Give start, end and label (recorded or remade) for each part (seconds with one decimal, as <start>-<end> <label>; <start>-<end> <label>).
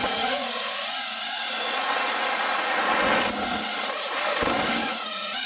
0.0-3.1 remade; 3.1-4.8 recorded; 4.8-5.5 remade